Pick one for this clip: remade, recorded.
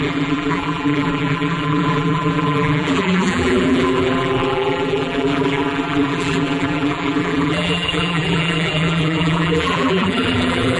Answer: remade